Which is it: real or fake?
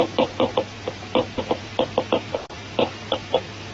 fake